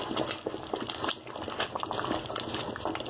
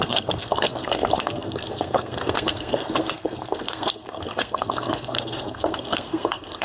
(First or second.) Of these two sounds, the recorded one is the first